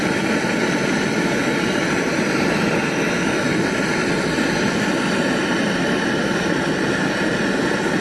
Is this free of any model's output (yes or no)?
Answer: yes